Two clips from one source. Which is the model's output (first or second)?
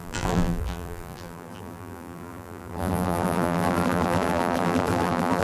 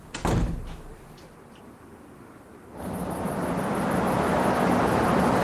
first